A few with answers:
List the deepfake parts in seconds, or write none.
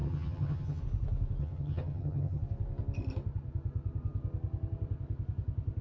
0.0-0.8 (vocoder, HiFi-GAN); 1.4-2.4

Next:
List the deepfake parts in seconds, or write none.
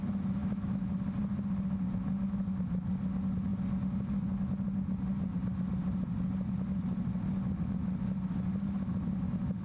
0.4-0.9 (autoencoder, DAC-VAE)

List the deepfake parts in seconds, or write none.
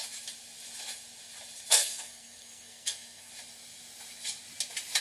1.7-3.3 (codec, SNAC)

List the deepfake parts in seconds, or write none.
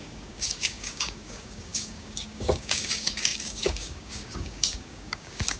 0.0-5.6 (codec, DAC)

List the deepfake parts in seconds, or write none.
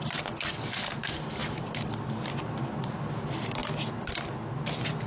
0.0-3.6 (vocoder, BigVGAN v2)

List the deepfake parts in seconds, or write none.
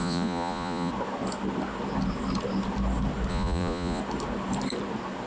0.0-0.9 (vocoder, Vocos); 3.3-4.0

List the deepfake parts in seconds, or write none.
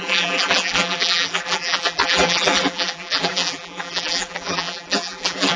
0.0-5.6 (vocoder, BigVGAN v2)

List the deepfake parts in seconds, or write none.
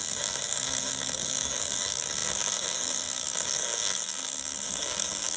0.0-5.4 (codec, DAC)